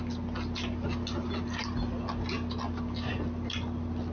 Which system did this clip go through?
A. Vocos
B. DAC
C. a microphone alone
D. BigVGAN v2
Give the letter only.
C